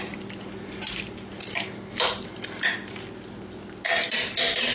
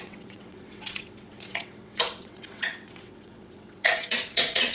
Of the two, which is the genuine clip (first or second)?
first